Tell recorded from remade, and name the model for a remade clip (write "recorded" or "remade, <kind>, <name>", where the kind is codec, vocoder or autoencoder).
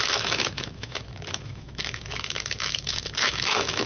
remade, autoencoder, DAC-VAE